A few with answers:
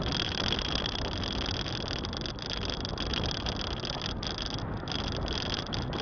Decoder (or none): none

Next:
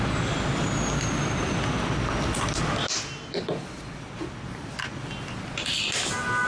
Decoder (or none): none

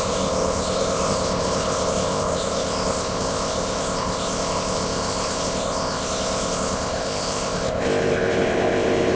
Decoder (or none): codec, ZipCodec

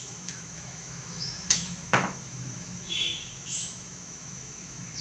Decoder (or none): autoencoder, DAC-VAE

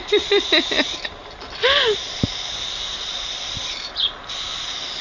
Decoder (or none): none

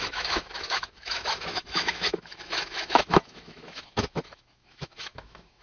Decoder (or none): autoencoder, DAC-VAE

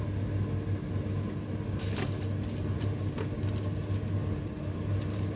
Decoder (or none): none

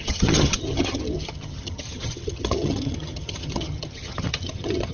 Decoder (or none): vocoder, HiFi-GAN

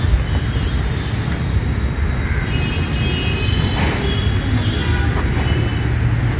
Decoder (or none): none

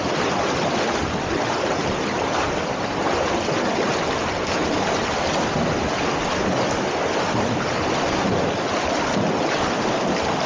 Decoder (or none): none